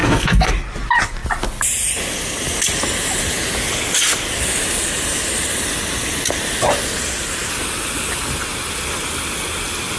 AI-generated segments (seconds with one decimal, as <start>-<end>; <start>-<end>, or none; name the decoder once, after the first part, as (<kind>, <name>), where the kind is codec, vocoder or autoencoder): 0.0-0.5 (codec, SNAC)